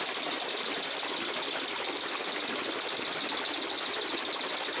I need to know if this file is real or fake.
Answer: real